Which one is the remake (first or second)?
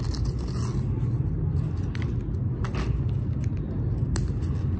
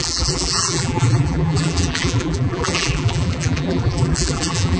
second